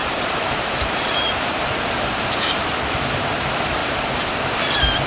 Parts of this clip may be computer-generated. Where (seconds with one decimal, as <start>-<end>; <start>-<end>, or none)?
0.0-2.7; 3.8-4.3